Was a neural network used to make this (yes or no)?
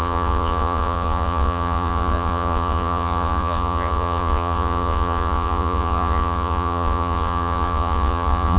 yes